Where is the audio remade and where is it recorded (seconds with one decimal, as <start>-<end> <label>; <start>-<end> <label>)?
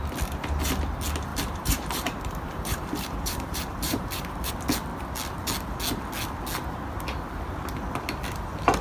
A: 0.0-1.3 recorded; 1.3-4.5 remade; 4.5-8.8 recorded